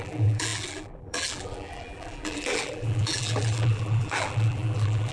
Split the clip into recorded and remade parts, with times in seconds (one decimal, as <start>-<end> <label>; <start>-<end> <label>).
0.0-5.1 remade